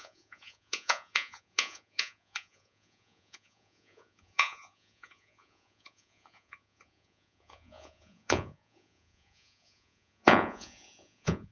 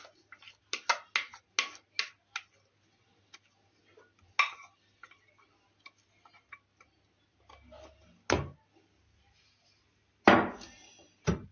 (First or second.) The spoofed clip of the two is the first